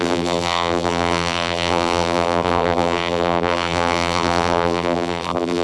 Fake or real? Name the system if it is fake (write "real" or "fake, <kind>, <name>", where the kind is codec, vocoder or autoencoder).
fake, vocoder, BigVGAN v2